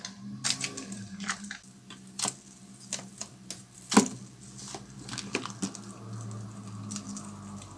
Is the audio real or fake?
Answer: real